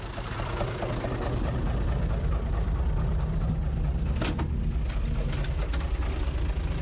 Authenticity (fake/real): real